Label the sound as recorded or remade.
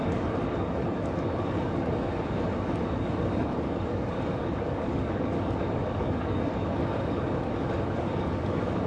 remade